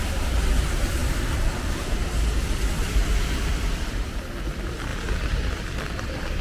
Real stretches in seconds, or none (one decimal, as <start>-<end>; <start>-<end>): none